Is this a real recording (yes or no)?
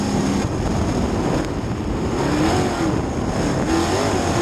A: yes